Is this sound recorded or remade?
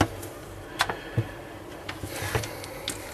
recorded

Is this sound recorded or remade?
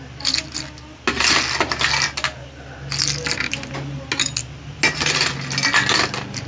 recorded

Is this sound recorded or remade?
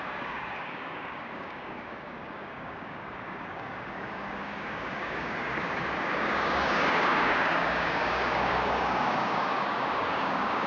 remade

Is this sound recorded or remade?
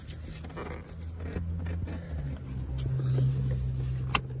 recorded